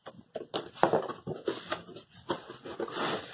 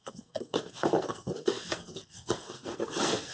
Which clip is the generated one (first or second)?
second